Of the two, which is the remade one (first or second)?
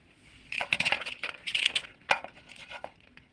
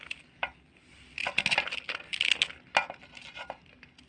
first